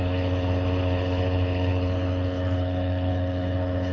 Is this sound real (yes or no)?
no